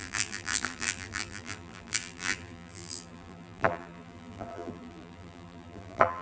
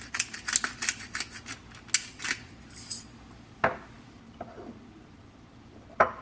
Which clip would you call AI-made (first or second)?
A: first